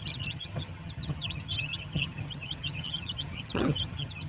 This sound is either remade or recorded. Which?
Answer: remade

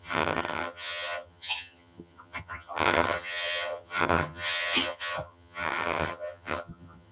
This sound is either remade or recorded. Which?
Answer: remade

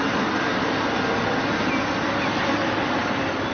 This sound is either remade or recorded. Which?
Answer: recorded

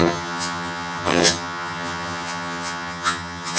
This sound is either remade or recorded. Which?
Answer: remade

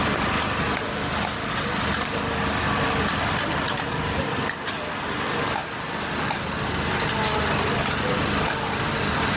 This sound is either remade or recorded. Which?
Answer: recorded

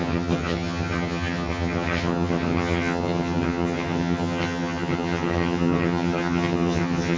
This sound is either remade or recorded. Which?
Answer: remade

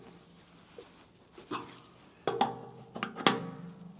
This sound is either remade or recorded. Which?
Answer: recorded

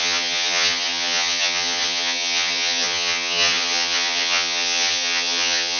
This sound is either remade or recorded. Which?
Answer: remade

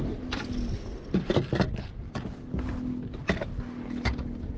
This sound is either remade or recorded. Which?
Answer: recorded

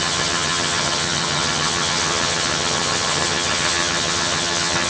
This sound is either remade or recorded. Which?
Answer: remade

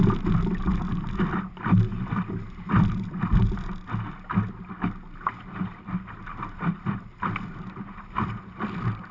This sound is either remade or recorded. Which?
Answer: recorded